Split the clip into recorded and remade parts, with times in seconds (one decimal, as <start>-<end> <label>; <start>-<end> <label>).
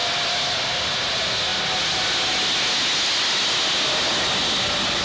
0.0-5.0 recorded